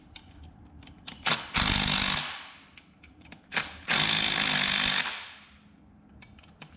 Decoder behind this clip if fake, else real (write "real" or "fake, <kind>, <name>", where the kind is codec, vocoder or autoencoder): real